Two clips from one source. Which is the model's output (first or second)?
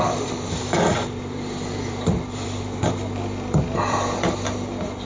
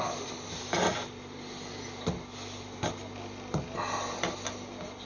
first